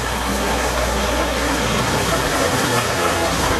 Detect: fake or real fake